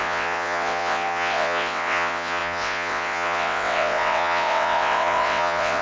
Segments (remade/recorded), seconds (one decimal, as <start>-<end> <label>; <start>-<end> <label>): 0.0-5.8 remade